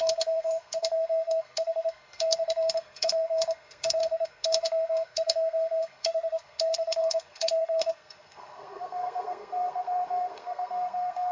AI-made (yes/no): yes